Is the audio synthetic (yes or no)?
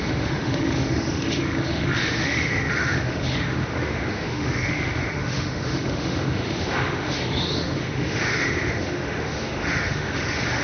yes